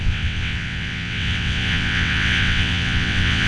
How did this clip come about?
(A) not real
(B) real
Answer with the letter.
A